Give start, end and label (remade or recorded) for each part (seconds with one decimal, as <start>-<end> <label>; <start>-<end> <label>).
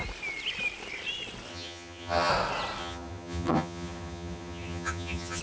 0.0-1.5 recorded; 1.5-2.3 remade; 2.3-2.8 recorded; 2.8-5.4 remade